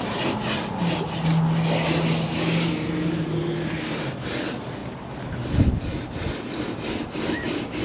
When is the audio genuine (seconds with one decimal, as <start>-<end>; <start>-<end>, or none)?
0.0-7.8